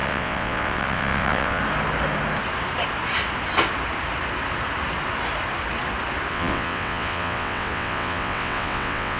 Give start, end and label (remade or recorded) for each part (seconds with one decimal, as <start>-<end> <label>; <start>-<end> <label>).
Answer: 0.0-1.6 remade; 1.6-6.3 recorded; 6.3-9.2 remade